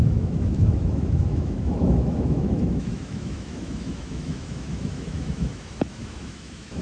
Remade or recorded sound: remade